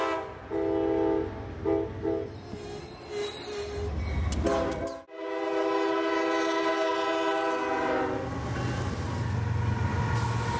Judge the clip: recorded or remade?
recorded